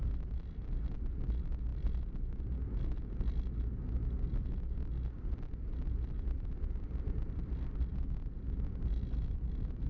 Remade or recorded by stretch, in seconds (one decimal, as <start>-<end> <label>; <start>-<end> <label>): 0.0-9.9 recorded